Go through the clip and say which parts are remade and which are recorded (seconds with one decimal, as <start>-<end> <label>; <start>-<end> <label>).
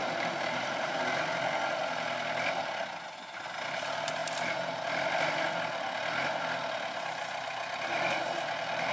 0.0-1.0 remade; 1.0-4.2 recorded; 4.2-4.8 remade; 4.8-8.9 recorded